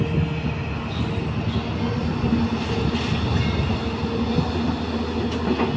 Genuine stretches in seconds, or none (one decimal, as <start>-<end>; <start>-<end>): 0.0-5.8